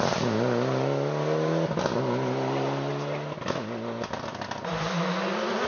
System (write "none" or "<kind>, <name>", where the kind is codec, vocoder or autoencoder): none